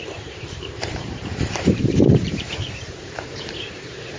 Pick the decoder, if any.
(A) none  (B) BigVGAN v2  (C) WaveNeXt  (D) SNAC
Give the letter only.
B